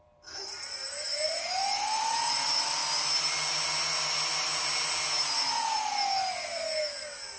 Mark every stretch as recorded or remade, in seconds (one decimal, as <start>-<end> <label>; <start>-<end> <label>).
0.0-2.8 remade; 2.8-7.4 recorded